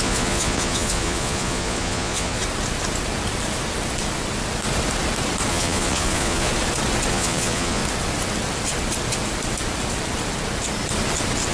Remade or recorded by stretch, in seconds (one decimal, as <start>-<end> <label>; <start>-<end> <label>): 0.0-2.4 remade; 2.4-5.5 recorded; 5.5-6.5 remade; 6.5-7.1 recorded; 7.1-7.8 remade; 7.8-11.5 recorded